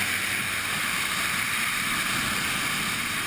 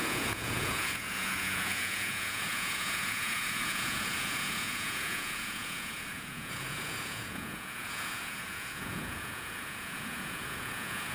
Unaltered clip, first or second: first